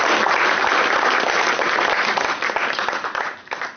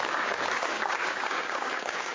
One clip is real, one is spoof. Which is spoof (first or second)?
second